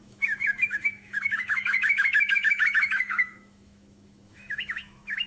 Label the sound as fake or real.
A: fake